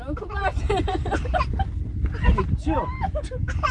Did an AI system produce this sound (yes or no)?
no